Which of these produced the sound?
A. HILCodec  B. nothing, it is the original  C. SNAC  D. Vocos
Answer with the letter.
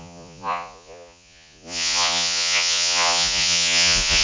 D